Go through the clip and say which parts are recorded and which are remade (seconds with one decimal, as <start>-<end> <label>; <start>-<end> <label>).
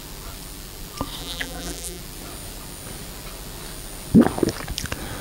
0.0-1.2 recorded; 1.2-2.0 remade; 2.0-5.2 recorded